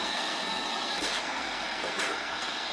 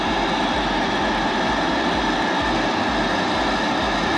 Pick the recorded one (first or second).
second